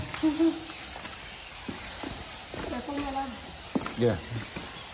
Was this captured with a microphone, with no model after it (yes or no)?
yes